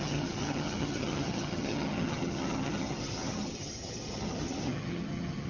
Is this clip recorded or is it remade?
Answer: remade